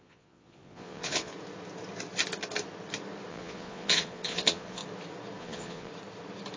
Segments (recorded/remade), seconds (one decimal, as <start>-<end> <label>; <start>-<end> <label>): 0.0-1.3 remade; 1.3-3.3 recorded; 3.3-4.8 remade; 4.8-5.4 recorded; 5.4-5.9 remade; 5.9-6.6 recorded